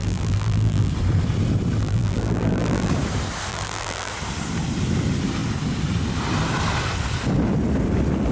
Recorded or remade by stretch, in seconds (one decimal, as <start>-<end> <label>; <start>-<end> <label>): 0.0-0.9 remade; 0.9-1.8 recorded; 1.8-2.9 remade; 2.9-3.5 recorded; 3.5-4.1 remade; 4.1-8.3 recorded